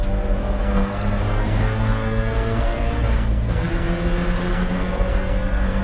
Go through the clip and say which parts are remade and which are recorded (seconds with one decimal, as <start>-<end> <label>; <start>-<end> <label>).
0.0-0.4 recorded; 0.4-3.9 remade; 3.9-4.5 recorded; 4.5-5.8 remade